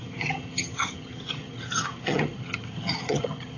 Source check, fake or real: fake